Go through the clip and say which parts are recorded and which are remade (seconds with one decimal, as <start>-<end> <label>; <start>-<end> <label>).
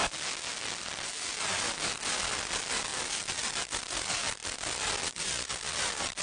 0.0-1.3 recorded; 1.3-2.9 remade; 2.9-3.4 recorded; 3.4-6.2 remade